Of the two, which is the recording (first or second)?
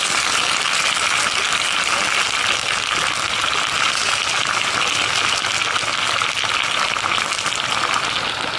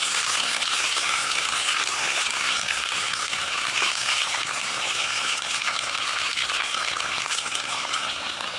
first